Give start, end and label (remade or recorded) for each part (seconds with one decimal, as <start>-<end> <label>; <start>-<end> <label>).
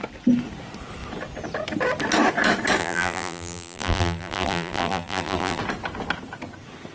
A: 0.0-2.8 recorded; 2.8-5.6 remade; 5.6-6.9 recorded